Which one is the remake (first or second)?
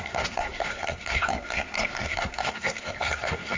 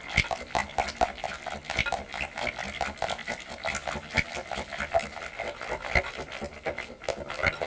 first